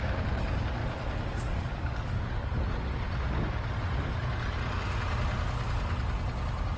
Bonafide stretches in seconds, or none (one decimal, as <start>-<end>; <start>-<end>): 0.8-1.3; 2.5-6.8

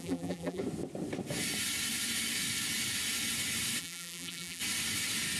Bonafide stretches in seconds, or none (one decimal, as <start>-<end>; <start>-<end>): 0.6-3.8; 4.6-5.4

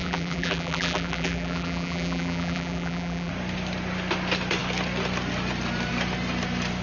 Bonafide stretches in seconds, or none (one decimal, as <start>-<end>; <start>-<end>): 3.3-6.8

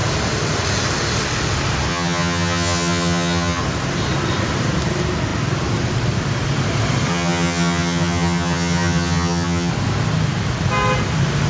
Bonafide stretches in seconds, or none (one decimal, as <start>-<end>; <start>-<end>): 0.0-1.9; 3.6-7.1; 9.7-11.5

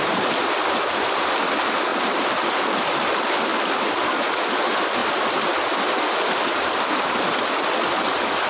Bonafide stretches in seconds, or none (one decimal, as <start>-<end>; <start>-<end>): 0.0-8.5

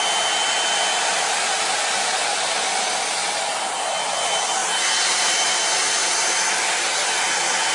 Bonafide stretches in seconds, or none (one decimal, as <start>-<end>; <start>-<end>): 0.0-7.7